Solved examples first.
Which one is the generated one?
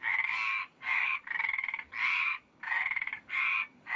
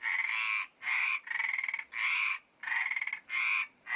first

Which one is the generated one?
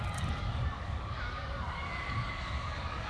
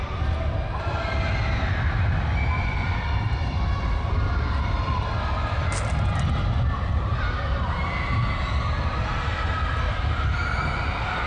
first